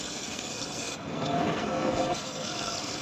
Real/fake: fake